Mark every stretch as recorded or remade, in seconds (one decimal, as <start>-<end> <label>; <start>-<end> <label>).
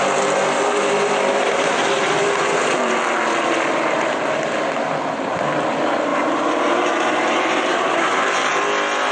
0.0-6.1 recorded; 6.1-8.5 remade; 8.5-9.1 recorded